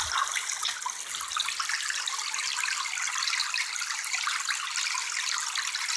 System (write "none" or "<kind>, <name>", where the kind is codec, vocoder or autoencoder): none